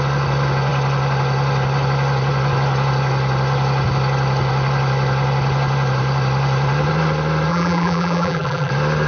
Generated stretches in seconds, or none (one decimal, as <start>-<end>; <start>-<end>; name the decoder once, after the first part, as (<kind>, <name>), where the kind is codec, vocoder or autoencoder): 7.5-8.7 (vocoder, BigVGAN v2)